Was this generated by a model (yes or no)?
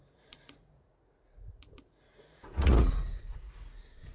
yes